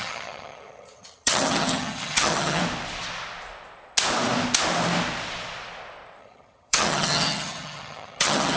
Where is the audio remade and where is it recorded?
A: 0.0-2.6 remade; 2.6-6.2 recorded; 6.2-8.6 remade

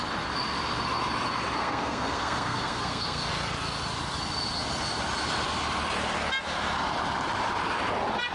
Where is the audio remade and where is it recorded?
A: 0.0-1.6 recorded; 1.6-3.3 remade; 3.3-8.3 recorded

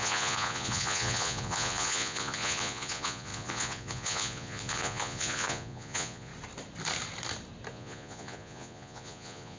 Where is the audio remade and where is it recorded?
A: 0.0-6.3 remade; 6.3-7.7 recorded; 7.7-9.6 remade

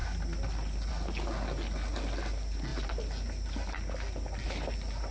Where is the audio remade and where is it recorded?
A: 0.0-5.1 recorded